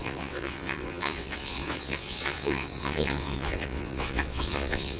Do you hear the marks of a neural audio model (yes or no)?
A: yes